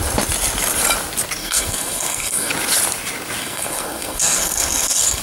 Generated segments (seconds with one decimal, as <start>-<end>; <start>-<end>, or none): 1.4-2.5; 3.4-5.2